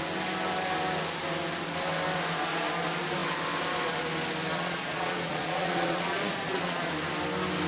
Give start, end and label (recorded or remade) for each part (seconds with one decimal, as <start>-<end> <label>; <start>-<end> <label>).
0.0-4.5 recorded; 4.5-6.9 remade; 6.9-7.7 recorded